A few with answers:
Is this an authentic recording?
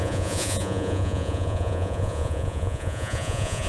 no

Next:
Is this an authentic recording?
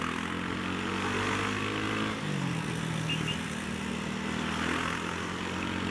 yes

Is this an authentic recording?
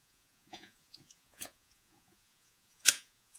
no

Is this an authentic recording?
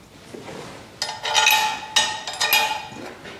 yes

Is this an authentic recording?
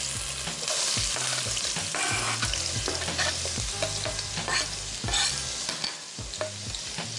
yes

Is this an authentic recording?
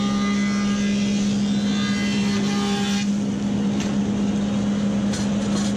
yes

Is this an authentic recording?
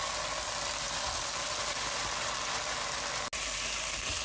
yes